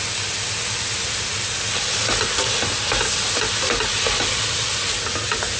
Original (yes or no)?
yes